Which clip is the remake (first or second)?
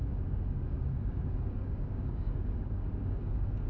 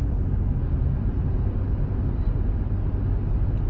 first